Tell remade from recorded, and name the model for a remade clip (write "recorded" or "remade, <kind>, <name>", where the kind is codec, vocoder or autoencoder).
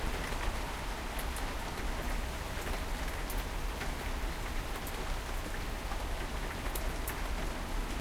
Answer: recorded